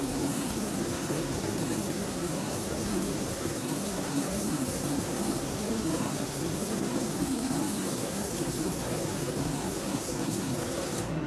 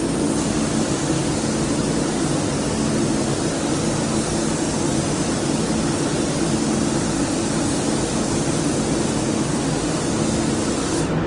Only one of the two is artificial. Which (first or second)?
first